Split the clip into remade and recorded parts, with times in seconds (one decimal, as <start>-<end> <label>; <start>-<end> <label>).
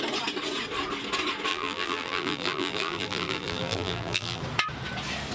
0.0-1.5 recorded; 1.5-4.4 remade; 4.4-5.3 recorded